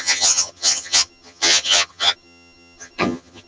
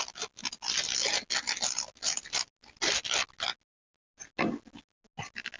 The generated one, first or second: first